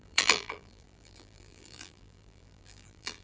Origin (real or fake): fake